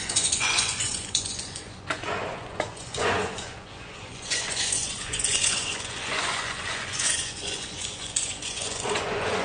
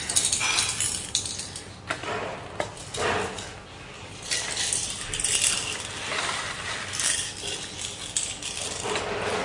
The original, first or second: second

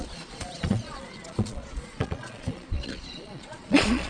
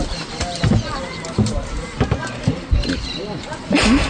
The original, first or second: second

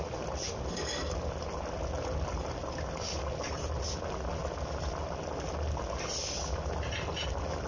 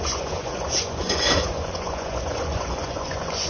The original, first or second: first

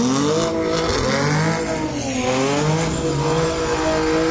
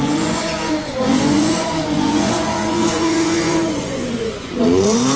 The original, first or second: first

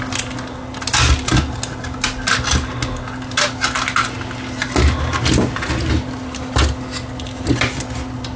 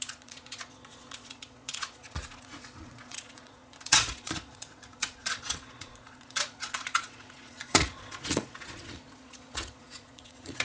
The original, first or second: first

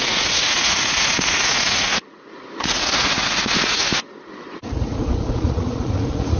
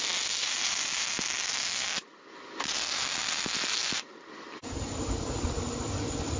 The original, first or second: second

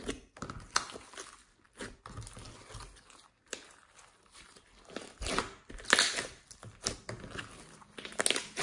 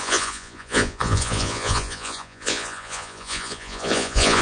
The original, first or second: first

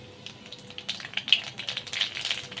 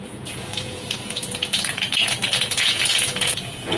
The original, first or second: first